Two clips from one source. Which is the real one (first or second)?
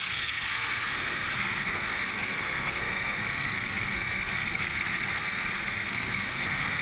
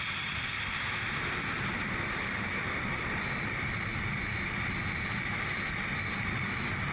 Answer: second